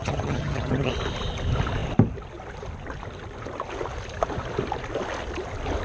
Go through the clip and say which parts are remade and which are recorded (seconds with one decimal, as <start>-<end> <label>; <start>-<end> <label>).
0.0-0.9 remade; 0.9-5.8 recorded